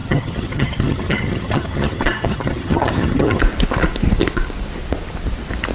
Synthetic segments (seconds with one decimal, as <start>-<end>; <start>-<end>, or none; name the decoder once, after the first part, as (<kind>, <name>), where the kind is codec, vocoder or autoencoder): 0.0-3.4 (vocoder, HiFi-GAN)